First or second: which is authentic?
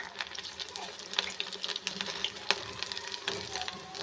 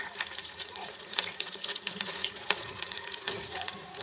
first